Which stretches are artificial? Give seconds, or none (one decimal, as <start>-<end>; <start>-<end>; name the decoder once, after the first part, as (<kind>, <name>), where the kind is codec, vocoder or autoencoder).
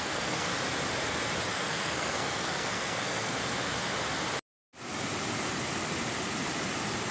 0.0-0.5 (codec, SNAC); 1.5-3.4